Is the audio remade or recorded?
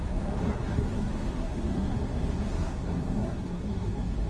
remade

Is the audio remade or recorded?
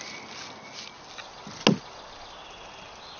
recorded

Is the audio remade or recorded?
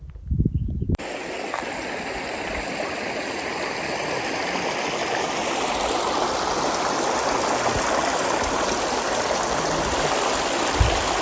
recorded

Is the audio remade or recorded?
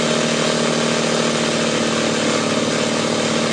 recorded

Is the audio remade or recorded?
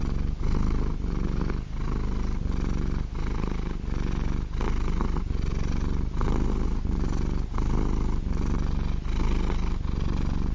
recorded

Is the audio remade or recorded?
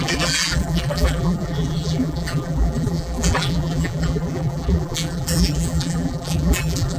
remade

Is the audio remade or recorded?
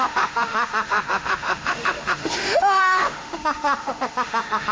remade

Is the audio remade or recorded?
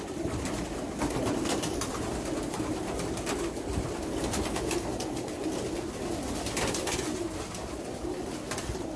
recorded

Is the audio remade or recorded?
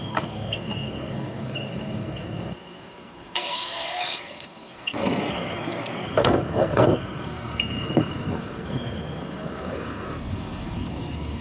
remade